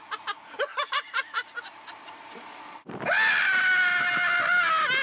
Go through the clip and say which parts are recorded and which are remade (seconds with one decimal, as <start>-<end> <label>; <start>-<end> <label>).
0.0-0.7 recorded; 0.7-2.7 remade; 2.7-5.0 recorded